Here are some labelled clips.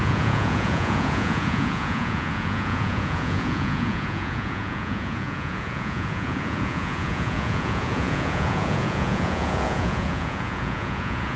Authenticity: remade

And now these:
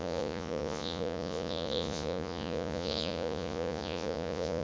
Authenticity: remade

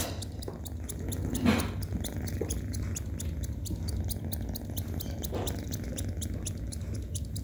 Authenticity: recorded